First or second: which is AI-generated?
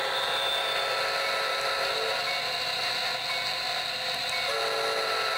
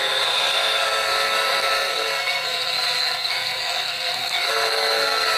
second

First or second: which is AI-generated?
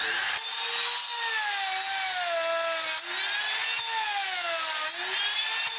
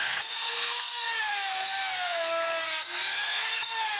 second